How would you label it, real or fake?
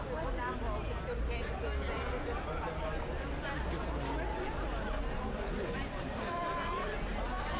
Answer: real